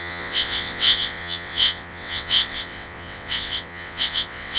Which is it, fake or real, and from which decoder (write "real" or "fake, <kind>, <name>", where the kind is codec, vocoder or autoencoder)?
fake, vocoder, WaveNeXt